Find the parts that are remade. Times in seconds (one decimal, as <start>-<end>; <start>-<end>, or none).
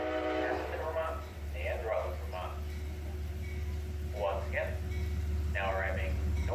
0.0-1.8; 5.7-6.5